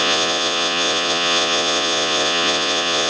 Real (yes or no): no